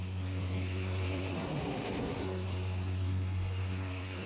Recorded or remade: remade